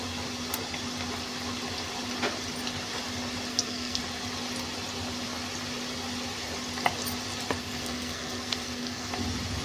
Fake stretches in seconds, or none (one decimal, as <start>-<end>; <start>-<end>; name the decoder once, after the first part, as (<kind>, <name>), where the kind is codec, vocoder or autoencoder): 3.5-4.0 (codec, SNAC); 7.6-9.1